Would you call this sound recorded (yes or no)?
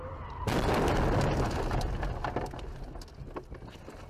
yes